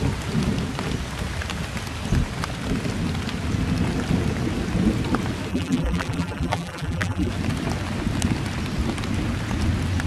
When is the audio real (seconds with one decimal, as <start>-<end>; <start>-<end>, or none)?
0.0-5.5; 7.3-10.1